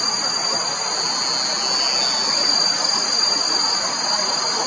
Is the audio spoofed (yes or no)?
no